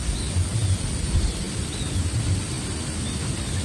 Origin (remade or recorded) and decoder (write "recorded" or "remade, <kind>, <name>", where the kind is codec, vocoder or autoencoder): recorded